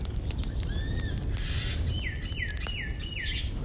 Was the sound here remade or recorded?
recorded